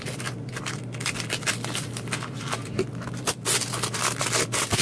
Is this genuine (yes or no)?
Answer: yes